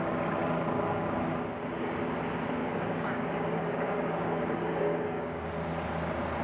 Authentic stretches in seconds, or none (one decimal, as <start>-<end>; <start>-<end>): 0.0-2.6; 5.5-6.4